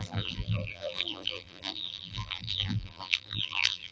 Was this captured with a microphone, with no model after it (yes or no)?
no